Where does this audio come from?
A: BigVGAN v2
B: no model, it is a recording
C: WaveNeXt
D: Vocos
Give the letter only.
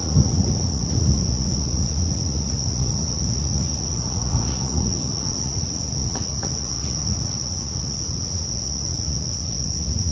D